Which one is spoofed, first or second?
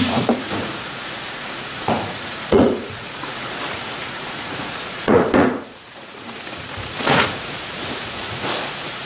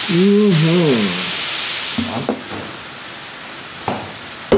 first